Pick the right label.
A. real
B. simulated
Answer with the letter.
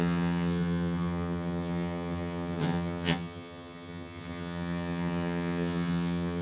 B